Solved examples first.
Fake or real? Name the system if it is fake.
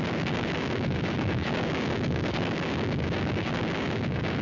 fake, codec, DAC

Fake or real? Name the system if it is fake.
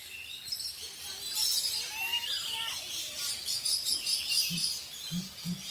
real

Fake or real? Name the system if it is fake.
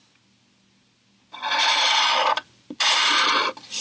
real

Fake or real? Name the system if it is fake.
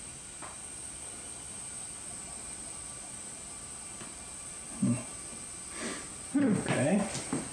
real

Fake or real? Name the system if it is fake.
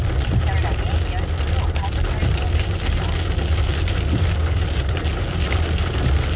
real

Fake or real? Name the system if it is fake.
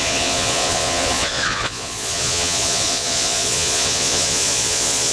fake, vocoder, Vocos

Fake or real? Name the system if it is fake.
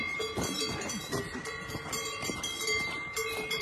fake, vocoder, BigVGAN v2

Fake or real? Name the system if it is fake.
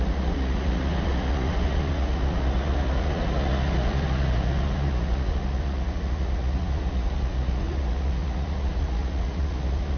fake, vocoder, Vocos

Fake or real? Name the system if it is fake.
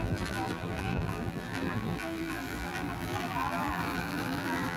fake, vocoder, BigVGAN v2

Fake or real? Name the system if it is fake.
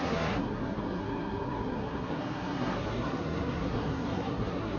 fake, codec, SNAC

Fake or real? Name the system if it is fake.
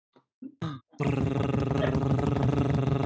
real